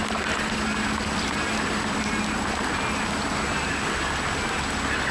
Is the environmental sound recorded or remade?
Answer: recorded